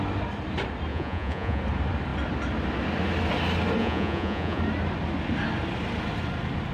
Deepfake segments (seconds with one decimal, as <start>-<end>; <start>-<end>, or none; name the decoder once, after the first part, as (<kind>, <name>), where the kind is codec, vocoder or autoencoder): 0.9-1.6 (vocoder, Vocos); 3.8-4.6